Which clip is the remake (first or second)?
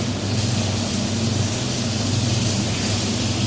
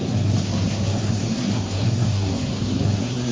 second